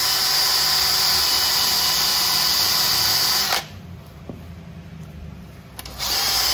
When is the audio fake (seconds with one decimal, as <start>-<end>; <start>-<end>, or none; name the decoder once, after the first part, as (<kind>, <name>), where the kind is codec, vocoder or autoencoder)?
none